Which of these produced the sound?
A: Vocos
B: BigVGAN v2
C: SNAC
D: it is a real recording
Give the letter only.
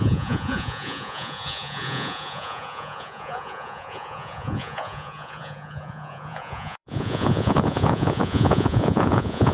A